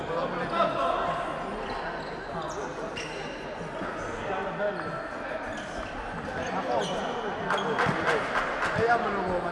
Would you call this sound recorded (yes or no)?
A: yes